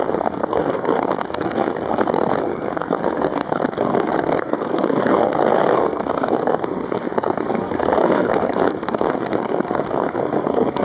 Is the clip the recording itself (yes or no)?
no